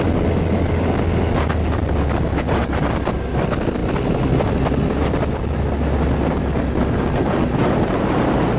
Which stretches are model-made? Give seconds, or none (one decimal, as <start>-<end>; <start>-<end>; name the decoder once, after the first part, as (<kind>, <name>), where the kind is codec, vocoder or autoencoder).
none

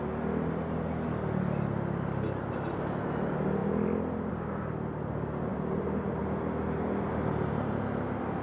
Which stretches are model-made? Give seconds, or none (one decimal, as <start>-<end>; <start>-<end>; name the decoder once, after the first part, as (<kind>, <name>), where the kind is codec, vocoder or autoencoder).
5.5-6.2 (vocoder, BigVGAN v2)

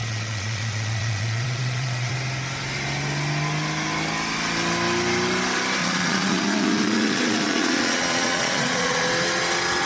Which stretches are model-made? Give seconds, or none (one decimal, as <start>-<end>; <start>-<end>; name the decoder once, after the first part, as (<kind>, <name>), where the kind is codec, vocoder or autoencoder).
0.0-2.1 (vocoder, Vocos); 5.8-9.0